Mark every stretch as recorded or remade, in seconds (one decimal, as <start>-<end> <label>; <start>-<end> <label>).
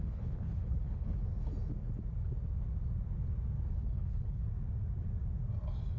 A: 0.0-1.2 remade; 1.2-3.7 recorded; 3.7-4.4 remade; 4.4-6.0 recorded